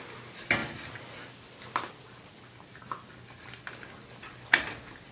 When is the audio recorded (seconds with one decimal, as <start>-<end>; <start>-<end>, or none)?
0.0-5.1